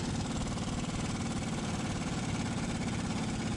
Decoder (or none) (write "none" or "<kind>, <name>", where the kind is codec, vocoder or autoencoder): none